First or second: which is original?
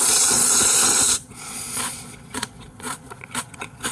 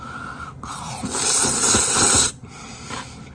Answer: second